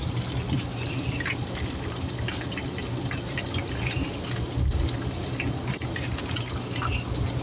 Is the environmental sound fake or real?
real